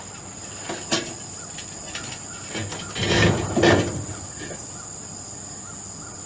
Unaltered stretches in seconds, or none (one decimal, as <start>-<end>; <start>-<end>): 0.0-6.3